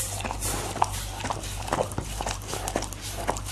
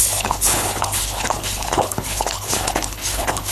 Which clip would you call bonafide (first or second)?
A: first